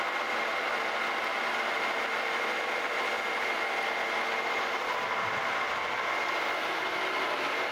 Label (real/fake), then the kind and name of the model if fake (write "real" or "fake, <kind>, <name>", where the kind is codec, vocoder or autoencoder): real